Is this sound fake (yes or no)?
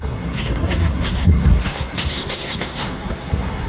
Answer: yes